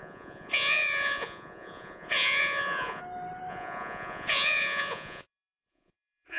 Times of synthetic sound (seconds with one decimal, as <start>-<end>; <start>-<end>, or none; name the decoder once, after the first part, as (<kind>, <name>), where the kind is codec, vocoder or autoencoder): 0.0-3.0 (vocoder, Vocos); 3.5-6.4